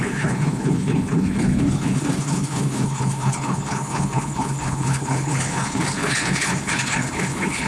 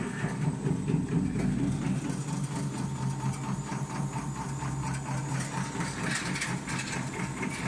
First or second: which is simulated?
first